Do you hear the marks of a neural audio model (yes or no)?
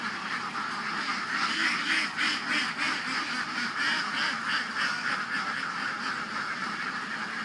no